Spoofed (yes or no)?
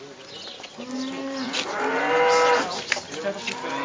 no